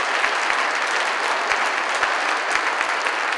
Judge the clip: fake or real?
real